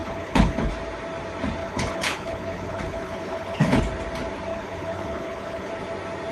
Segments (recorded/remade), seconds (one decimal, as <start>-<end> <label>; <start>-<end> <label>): 0.0-0.7 remade; 0.7-1.6 recorded; 1.6-3.8 remade; 3.8-4.5 recorded; 4.5-5.7 remade; 5.7-6.3 recorded